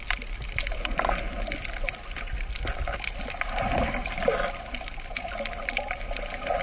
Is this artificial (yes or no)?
no